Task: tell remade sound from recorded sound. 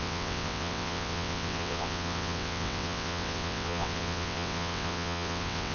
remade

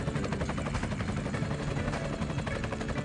recorded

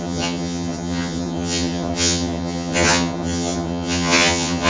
remade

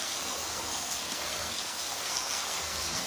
remade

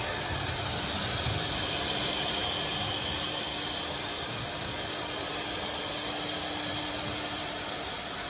remade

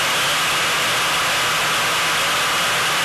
recorded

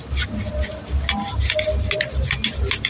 recorded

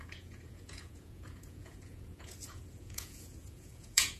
remade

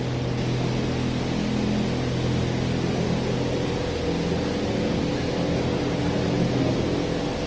recorded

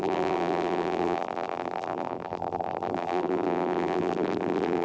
remade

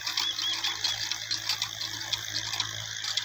recorded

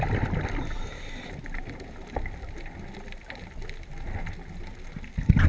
recorded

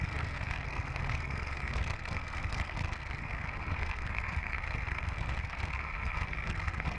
remade